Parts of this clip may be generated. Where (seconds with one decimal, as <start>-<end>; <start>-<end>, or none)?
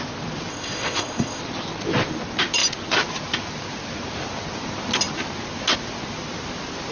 0.5-1.4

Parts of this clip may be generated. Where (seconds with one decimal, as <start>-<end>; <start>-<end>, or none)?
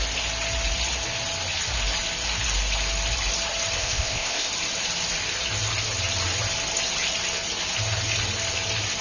3.8-4.5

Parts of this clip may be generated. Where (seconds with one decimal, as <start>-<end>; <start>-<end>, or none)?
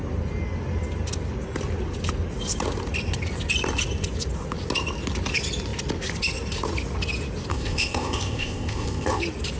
7.5-9.2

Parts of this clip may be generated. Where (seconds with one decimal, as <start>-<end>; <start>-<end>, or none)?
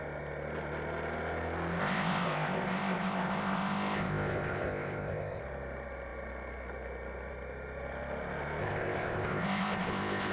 1.8-5.4; 8.6-10.3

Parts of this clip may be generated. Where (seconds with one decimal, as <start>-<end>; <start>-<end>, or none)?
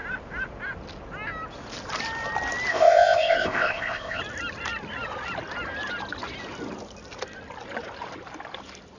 2.7-4.2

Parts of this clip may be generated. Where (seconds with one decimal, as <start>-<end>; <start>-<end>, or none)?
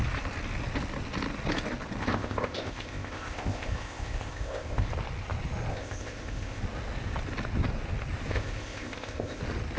2.0-4.9; 5.7-6.6; 8.3-9.4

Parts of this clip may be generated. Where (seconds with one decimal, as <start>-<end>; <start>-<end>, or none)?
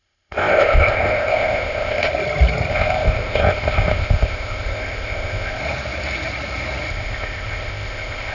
0.0-2.1; 2.7-5.6; 6.9-8.3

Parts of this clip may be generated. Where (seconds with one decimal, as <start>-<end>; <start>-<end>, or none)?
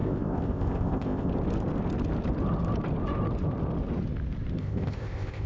0.0-1.3; 4.6-5.5